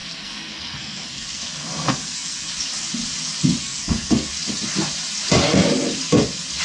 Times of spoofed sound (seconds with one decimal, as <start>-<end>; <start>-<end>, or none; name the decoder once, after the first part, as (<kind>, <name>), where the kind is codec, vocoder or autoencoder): 0.0-2.5 (codec, SNAC); 3.6-4.3